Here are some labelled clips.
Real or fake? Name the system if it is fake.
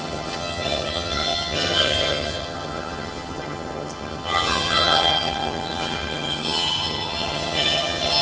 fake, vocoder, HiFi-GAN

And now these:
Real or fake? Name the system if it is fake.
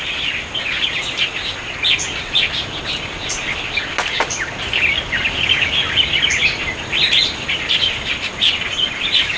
real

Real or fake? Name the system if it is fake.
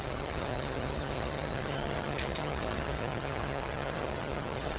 fake, vocoder, HiFi-GAN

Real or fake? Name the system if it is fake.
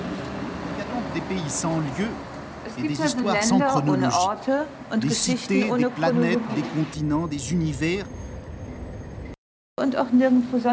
real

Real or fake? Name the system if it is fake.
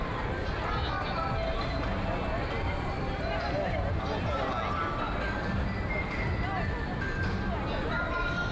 real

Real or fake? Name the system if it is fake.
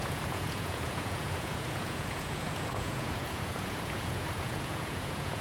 fake, vocoder, Vocos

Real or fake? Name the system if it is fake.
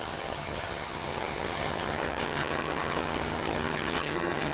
fake, vocoder, HiFi-GAN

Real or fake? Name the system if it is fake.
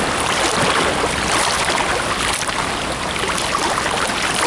real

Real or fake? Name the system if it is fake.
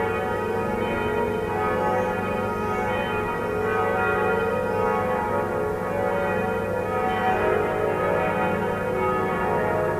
real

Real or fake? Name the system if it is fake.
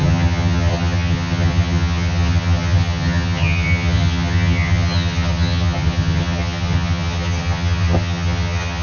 fake, vocoder, HiFi-GAN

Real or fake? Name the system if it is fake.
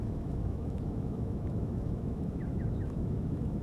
fake, autoencoder, DAC-VAE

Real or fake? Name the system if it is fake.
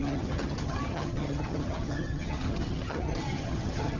fake, vocoder, HiFi-GAN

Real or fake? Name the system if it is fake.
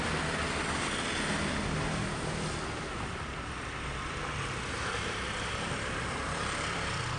real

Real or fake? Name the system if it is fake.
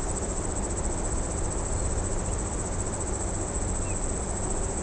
real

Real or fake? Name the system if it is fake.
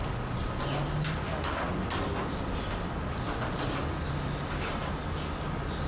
real